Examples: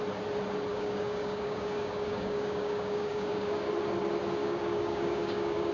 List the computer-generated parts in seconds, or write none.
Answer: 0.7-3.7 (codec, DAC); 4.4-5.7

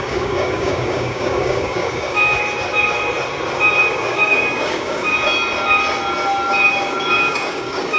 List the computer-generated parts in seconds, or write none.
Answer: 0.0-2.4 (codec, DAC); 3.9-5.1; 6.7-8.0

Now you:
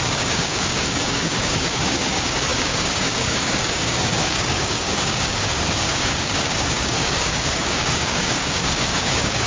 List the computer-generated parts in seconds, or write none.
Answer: 0.0-9.5 (codec, DAC)

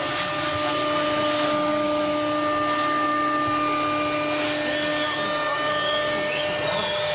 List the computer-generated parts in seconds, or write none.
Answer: 4.9-6.4 (codec, DAC)